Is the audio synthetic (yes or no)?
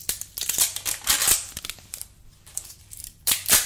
yes